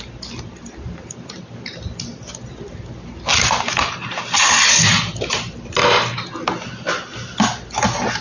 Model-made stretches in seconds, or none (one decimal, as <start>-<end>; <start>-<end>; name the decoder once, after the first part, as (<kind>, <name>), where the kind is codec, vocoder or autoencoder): none